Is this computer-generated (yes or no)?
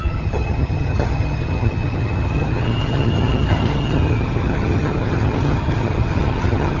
yes